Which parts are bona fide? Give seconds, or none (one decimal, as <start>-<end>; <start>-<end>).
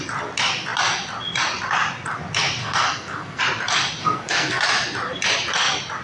0.0-2.6; 3.4-4.0; 4.6-6.0